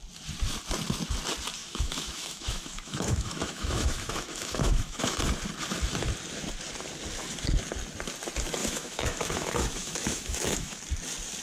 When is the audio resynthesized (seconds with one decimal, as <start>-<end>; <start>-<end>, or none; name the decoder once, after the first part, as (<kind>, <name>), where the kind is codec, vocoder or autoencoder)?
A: 1.6-5.2 (autoencoder, DAC-VAE); 8.6-10.8